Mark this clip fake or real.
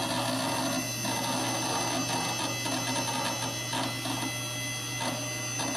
real